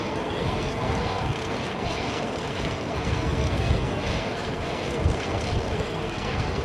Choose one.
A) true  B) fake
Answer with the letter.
B